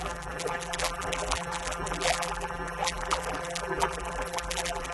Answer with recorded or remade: remade